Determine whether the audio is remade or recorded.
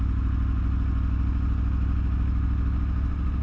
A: recorded